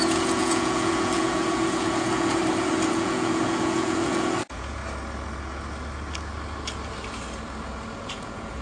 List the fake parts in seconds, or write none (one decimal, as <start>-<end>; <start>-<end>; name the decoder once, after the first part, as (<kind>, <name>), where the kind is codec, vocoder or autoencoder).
0.0-2.4 (vocoder, Vocos); 2.9-4.8; 8.1-8.6